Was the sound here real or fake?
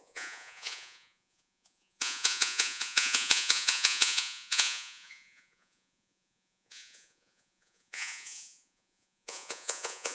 fake